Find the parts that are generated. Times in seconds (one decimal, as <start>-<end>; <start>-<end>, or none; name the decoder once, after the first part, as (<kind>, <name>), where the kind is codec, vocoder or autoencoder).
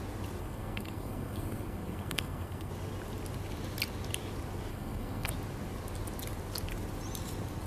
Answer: 0.4-2.7 (codec, SNAC); 4.7-5.3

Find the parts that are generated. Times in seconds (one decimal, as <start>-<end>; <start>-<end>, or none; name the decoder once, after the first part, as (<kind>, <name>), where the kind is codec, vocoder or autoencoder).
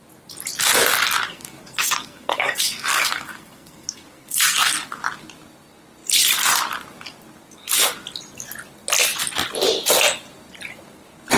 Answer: 1.3-5.0 (codec, SNAC)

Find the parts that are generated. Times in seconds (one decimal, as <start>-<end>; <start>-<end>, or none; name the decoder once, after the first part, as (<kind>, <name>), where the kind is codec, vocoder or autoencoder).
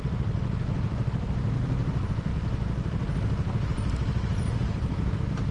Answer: none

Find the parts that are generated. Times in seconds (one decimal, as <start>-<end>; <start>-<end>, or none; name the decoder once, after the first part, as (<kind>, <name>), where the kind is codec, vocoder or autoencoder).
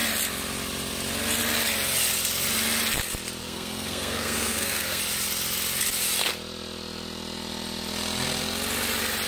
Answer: 3.4-5.0 (codec, SNAC)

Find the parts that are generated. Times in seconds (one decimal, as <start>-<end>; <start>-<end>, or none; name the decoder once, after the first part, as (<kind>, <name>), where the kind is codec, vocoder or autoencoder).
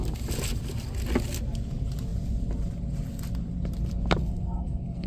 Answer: 4.2-5.1 (codec, SNAC)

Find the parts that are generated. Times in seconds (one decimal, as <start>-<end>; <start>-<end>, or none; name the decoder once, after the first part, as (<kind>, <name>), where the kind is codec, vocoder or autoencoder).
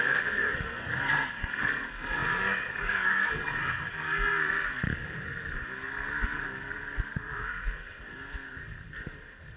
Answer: 0.0-9.6 (codec, SNAC)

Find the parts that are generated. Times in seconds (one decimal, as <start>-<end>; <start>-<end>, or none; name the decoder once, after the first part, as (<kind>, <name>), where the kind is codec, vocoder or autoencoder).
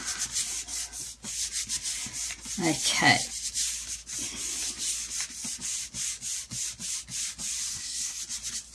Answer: 7.7-8.2 (codec, SNAC)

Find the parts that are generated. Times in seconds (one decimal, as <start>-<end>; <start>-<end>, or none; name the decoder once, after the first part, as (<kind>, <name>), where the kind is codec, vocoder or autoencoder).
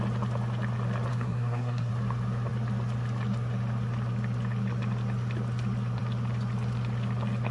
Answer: 1.1-1.9 (codec, SNAC)